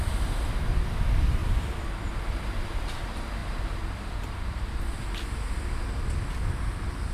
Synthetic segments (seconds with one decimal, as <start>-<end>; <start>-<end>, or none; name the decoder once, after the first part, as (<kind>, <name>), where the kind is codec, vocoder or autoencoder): 0.0-1.4 (vocoder, BigVGAN v2); 2.1-7.1